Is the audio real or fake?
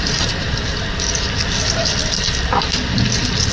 fake